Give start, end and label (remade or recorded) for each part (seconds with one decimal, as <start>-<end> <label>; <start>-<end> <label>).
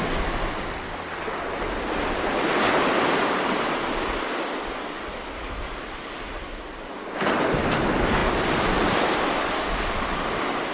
0.0-10.7 recorded